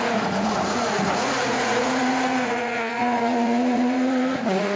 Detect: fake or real fake